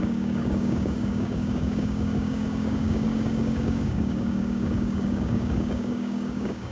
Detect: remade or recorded remade